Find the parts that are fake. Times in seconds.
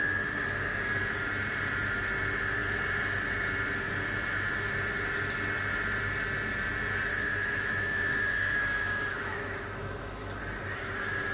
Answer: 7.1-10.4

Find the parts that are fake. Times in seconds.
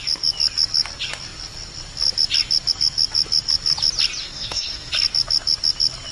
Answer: 4.2-4.9